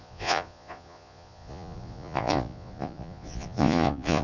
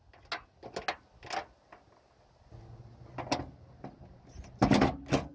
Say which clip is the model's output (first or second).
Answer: first